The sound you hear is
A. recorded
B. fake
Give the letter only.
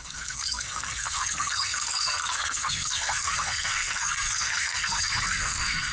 B